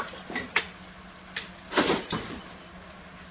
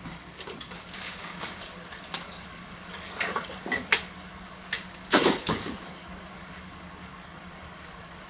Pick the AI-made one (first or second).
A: second